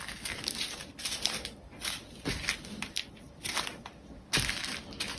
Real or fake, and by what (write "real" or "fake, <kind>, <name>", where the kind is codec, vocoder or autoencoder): real